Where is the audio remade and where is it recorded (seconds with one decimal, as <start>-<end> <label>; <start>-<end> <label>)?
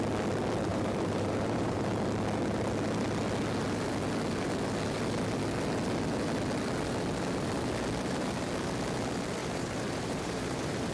0.0-0.7 recorded; 0.7-1.8 remade; 1.8-9.4 recorded; 9.4-10.9 remade